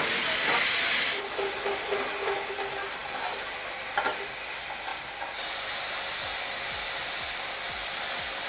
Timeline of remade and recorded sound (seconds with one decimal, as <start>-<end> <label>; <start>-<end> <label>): 0.0-8.5 recorded